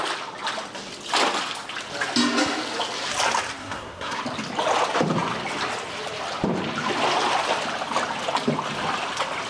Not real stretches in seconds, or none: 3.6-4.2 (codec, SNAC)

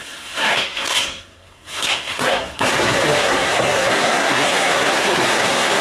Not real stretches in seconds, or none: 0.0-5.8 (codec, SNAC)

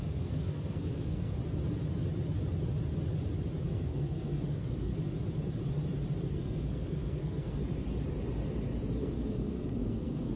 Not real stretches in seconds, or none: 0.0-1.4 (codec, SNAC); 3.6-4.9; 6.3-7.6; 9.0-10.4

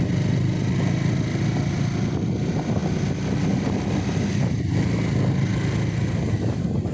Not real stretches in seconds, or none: none

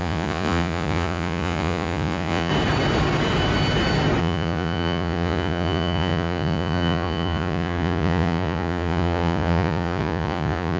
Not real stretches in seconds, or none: 0.0-2.5 (vocoder, Vocos); 4.2-10.8

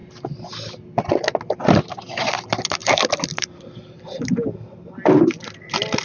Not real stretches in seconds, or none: none

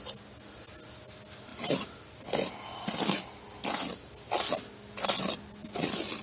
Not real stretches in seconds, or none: none